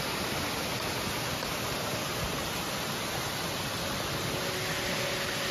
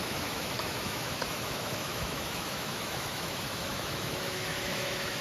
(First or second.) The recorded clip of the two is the first